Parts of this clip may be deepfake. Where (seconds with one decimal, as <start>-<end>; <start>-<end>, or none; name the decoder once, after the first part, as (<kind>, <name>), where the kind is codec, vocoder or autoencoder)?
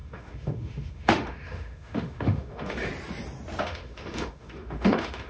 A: 0.0-2.9 (autoencoder, DAC-VAE); 3.6-5.3